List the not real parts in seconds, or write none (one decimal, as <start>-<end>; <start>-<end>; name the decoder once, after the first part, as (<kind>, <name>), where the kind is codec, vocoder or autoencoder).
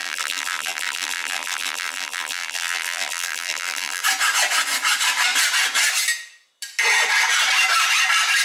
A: 0.0-4.0 (vocoder, BigVGAN v2)